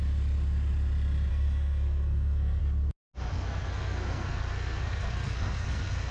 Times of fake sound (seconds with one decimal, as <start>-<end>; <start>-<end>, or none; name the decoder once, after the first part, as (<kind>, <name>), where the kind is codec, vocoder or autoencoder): 1.3-2.6 (codec, SNAC); 3.3-6.1